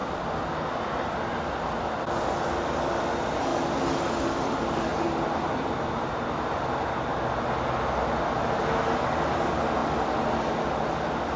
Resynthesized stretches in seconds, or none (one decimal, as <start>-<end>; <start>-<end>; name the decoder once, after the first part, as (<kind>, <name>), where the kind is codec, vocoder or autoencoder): none